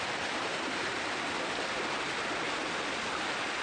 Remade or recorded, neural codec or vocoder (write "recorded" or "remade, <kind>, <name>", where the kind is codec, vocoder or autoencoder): recorded